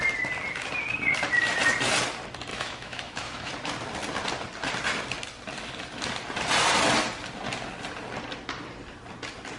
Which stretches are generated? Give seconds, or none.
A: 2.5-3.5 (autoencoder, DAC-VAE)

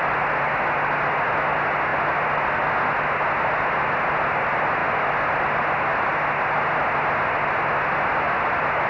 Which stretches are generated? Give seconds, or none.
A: none

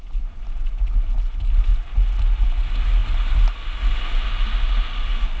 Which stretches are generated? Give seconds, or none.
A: none

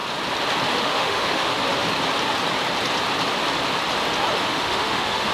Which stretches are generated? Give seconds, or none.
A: 0.8-1.5 (autoencoder, DAC-VAE); 4.5-5.3

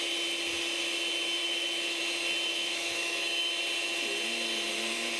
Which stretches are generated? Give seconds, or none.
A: 1.4-2.0 (autoencoder, DAC-VAE); 2.5-3.6

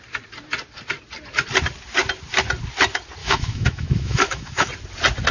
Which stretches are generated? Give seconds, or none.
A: 3.2-4.7 (autoencoder, DAC-VAE)

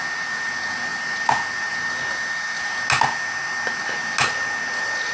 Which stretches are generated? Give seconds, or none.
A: none

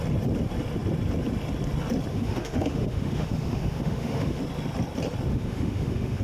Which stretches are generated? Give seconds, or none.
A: 2.1-4.4 (autoencoder, DAC-VAE); 5.3-6.2